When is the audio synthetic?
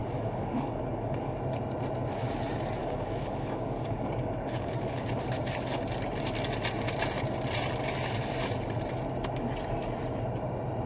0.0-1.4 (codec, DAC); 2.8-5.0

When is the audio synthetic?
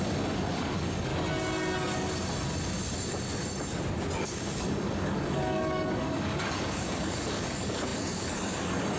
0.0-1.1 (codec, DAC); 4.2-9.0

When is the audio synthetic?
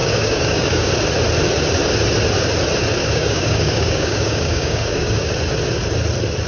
0.0-0.9 (codec, DAC); 3.0-5.3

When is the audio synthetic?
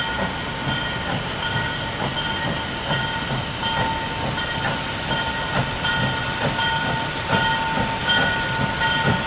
none